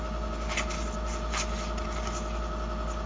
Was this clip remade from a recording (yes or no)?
no